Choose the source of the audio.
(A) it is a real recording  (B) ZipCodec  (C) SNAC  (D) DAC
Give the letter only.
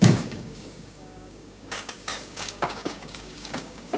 D